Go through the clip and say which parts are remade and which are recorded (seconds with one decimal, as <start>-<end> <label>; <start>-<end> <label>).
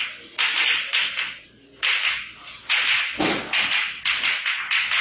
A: 0.0-5.0 recorded